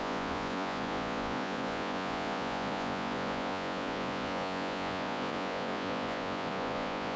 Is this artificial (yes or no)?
yes